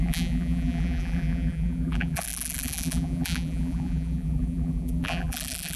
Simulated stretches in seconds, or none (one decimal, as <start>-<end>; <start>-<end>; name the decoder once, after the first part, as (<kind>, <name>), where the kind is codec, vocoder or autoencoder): 0.0-5.8 (vocoder, BigVGAN v2)